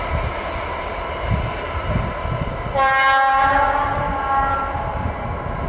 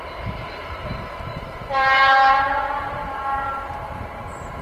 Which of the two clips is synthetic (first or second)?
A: second